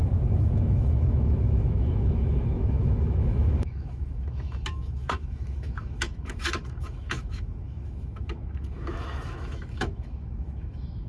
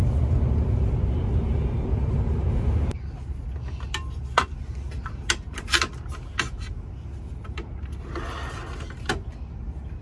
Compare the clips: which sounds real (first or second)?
second